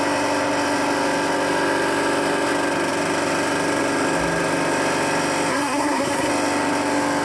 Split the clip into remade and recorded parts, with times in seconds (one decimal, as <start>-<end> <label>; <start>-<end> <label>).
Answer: 0.0-5.5 recorded; 5.5-6.3 remade; 6.3-7.2 recorded

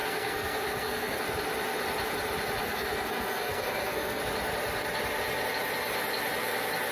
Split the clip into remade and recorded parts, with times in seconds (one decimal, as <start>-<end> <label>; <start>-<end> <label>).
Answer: 0.0-1.2 remade; 1.2-2.6 recorded; 2.6-4.2 remade; 4.2-6.9 recorded

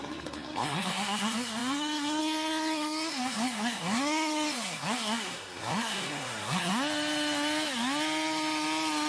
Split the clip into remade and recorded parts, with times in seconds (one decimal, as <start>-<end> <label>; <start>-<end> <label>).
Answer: 0.0-6.7 remade; 6.7-9.1 recorded

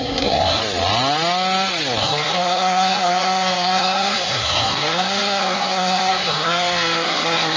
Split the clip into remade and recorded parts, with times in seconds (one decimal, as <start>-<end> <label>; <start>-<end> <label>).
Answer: 0.0-0.6 remade; 0.6-2.0 recorded; 2.0-7.6 remade

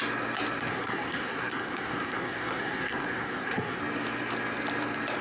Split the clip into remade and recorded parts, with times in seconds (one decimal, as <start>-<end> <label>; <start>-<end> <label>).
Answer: 0.0-0.7 recorded; 0.7-3.8 remade; 3.8-5.2 recorded

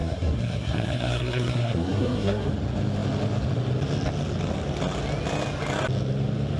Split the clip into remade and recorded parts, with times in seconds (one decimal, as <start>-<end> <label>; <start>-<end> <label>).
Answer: 0.0-2.5 remade; 2.5-6.6 recorded